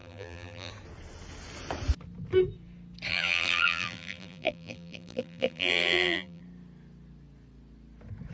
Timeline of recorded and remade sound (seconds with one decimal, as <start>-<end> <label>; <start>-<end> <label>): 0.0-0.7 remade; 0.7-3.1 recorded; 3.1-6.4 remade; 6.4-8.3 recorded